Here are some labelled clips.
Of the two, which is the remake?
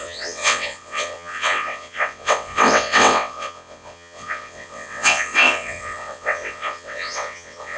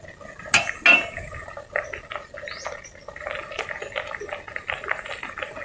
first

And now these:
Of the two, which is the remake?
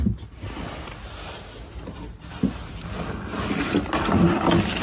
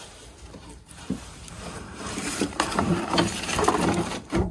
second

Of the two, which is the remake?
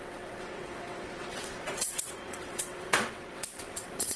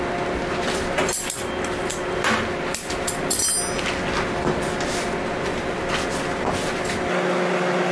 first